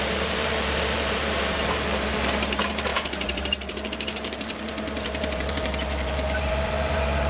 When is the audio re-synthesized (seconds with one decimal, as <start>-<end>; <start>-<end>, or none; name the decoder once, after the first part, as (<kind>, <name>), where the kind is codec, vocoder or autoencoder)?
0.0-7.3 (vocoder, BigVGAN v2)